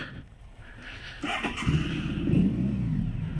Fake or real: real